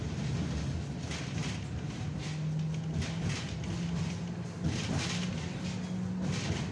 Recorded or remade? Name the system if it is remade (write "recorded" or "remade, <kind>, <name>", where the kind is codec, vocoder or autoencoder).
recorded